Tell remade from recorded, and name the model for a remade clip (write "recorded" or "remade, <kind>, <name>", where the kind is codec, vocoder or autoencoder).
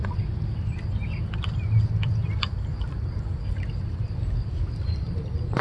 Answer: remade, vocoder, BigVGAN v2